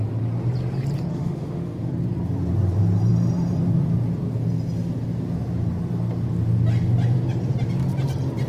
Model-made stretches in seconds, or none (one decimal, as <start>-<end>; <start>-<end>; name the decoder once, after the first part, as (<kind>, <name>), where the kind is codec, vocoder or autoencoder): 1.1-1.9 (autoencoder, DAC-VAE)